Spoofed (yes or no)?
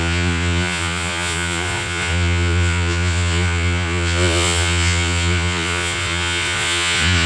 yes